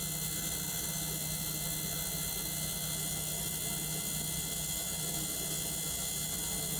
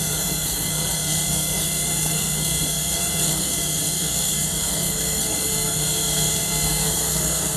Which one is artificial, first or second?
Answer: second